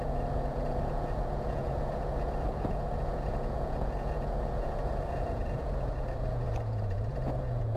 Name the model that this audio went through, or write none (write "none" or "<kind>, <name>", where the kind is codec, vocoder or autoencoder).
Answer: vocoder, Vocos